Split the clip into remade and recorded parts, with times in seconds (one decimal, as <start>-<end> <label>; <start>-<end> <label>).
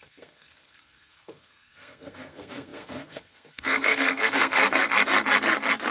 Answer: 0.0-4.6 remade; 4.6-5.9 recorded